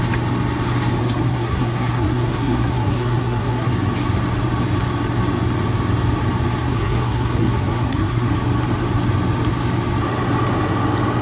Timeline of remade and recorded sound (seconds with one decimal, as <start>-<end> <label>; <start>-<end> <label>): 0.0-1.0 recorded; 1.0-3.7 remade; 3.7-6.7 recorded; 6.7-8.3 remade; 8.3-11.2 recorded